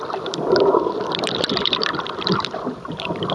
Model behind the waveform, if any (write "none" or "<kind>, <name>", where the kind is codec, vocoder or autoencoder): vocoder, BigVGAN v2